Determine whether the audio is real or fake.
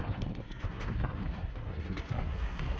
fake